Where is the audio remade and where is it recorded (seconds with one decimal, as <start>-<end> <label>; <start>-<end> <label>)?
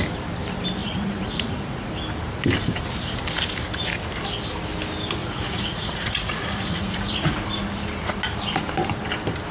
0.0-0.8 recorded; 0.8-1.9 remade; 1.9-5.2 recorded; 5.2-7.4 remade; 7.4-9.5 recorded